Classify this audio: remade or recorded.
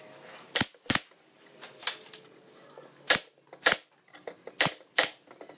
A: recorded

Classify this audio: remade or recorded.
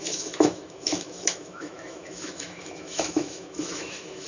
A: remade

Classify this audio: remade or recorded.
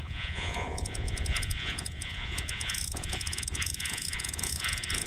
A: remade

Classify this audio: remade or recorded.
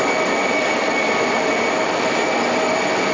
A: recorded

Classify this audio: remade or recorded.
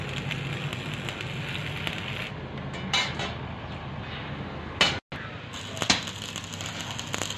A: recorded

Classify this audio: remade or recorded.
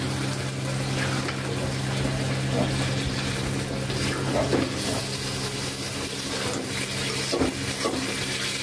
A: recorded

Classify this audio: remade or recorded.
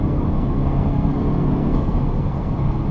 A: remade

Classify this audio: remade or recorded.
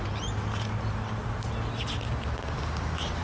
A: recorded